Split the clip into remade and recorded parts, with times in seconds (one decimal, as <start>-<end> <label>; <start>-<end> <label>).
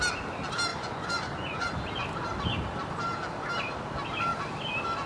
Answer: 0.0-0.7 recorded; 0.7-1.7 remade; 1.7-5.1 recorded